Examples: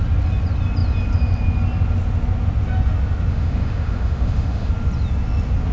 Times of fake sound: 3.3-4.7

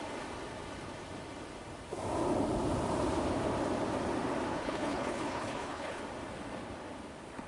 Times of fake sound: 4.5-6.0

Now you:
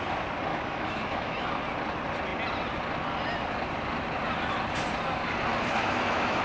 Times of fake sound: 0.5-1.5; 5.5-6.4

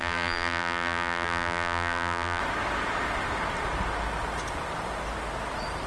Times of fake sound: 0.0-2.4

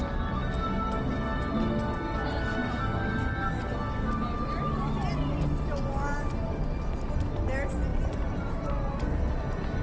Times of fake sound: 7.9-8.9